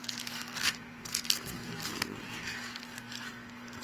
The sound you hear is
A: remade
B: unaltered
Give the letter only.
A